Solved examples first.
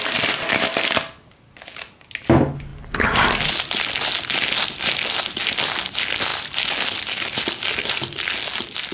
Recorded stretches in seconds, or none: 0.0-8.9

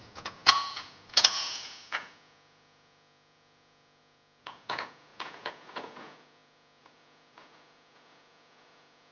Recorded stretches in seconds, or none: none

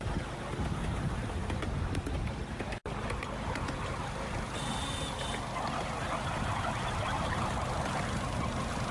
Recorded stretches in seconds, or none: 0.0-8.9

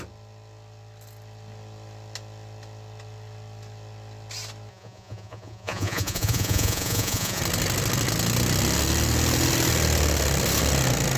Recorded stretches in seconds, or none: 0.0-4.7; 7.4-11.2